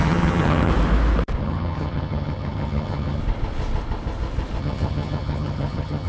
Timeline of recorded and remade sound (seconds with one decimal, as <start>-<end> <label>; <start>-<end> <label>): 0.0-0.7 remade; 0.7-1.4 recorded; 1.4-3.2 remade; 3.2-4.6 recorded; 4.6-6.1 remade